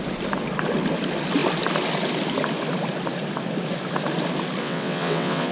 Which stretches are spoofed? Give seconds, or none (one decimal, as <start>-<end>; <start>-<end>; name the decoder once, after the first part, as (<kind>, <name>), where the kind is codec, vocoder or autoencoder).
4.6-5.5 (vocoder, WaveNeXt)